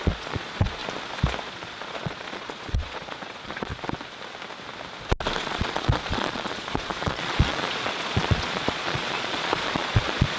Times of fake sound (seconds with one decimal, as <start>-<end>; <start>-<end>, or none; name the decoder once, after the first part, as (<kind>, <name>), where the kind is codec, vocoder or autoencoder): 0.0-0.8 (vocoder, Vocos); 1.4-3.7; 5.4-10.4